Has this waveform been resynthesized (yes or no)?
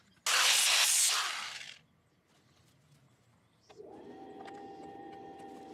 no